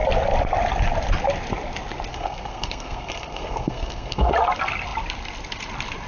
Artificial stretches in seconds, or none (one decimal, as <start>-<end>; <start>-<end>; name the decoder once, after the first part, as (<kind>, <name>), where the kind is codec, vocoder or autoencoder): 2.1-4.3 (codec, SNAC)